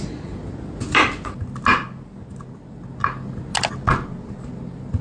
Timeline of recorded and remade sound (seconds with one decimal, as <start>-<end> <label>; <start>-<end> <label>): 0.0-5.0 recorded